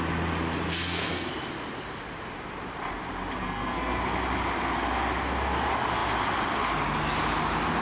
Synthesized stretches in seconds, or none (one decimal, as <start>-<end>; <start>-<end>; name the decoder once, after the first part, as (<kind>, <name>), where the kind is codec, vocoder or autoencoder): 0.7-1.3 (codec, SNAC); 3.4-4.0